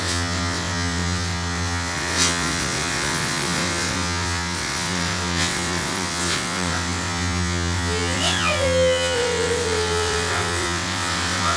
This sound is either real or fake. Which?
fake